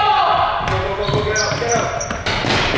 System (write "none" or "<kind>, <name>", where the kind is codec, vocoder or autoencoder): none